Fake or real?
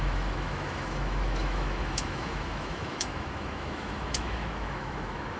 fake